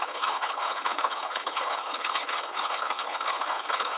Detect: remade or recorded remade